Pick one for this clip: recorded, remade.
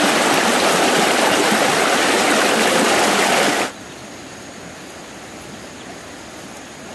recorded